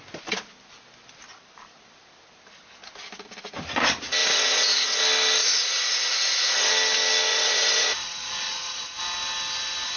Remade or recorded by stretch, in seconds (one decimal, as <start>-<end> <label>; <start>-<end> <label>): 0.0-4.2 recorded; 4.2-5.0 remade; 5.0-5.4 recorded; 5.4-6.7 remade; 6.7-7.3 recorded; 7.3-9.0 remade; 9.0-10.0 recorded

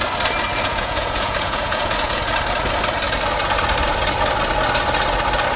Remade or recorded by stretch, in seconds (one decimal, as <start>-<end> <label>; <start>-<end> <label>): 0.0-0.6 recorded; 0.6-2.2 remade; 2.2-5.6 recorded

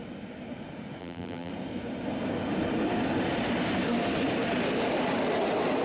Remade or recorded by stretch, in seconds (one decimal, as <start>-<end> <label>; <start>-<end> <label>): 0.0-1.0 recorded; 1.0-1.5 remade; 1.5-5.8 recorded

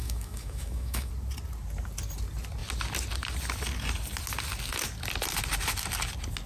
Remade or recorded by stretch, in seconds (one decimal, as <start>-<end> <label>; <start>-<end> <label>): 0.0-1.1 remade; 1.1-6.5 recorded

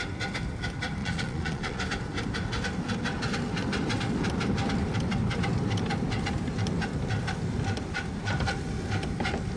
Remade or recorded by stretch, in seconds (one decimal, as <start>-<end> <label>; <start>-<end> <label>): 0.0-1.0 recorded; 1.0-1.8 remade; 1.8-9.6 recorded

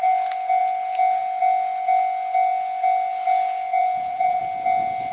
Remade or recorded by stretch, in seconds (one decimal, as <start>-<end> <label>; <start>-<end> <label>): 0.0-3.8 recorded; 3.8-4.4 remade; 4.4-5.1 recorded

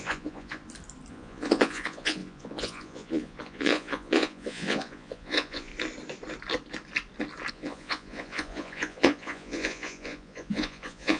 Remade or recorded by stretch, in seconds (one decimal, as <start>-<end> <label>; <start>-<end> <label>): 0.0-0.6 remade; 0.6-1.1 recorded; 1.1-5.7 remade; 5.7-7.5 recorded; 7.5-11.2 remade